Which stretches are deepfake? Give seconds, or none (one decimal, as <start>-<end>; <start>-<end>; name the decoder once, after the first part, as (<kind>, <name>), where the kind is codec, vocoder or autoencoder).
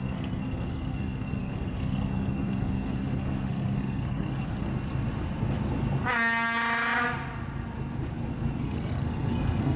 0.0-4.7 (codec, SNAC); 8.6-9.8